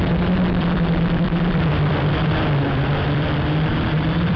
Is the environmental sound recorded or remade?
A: remade